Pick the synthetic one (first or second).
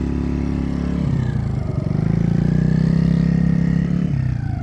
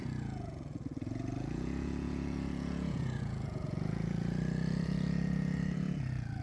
second